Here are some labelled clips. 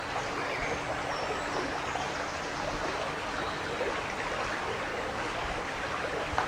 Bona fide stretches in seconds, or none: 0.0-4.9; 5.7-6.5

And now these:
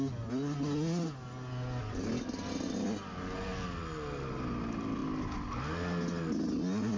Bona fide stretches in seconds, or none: 0.0-7.0